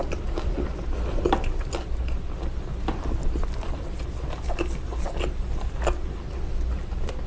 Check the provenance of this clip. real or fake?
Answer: real